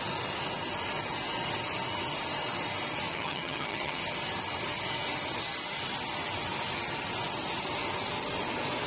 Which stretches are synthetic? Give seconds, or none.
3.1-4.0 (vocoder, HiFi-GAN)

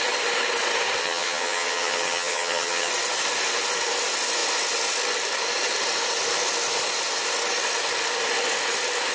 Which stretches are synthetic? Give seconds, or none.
1.0-2.9 (vocoder, HiFi-GAN)